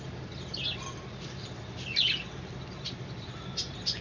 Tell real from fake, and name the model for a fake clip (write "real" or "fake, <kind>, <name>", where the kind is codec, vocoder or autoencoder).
real